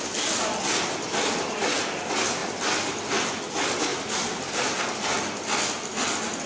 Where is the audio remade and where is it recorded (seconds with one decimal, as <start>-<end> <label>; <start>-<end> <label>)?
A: 0.0-6.5 recorded